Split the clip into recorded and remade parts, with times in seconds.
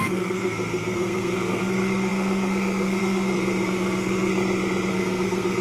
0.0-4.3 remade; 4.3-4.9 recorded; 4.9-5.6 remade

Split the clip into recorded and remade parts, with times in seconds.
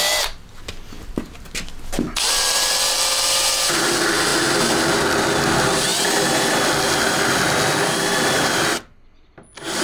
0.0-5.9 recorded; 5.9-6.4 remade; 6.4-9.8 recorded